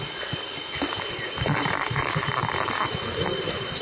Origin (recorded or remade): recorded